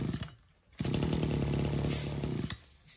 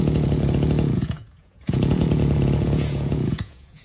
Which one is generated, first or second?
second